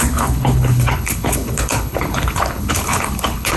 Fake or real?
fake